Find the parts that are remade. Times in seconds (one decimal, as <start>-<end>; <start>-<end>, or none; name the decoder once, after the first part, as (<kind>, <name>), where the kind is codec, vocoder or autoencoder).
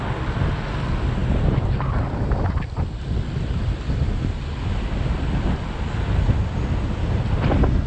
none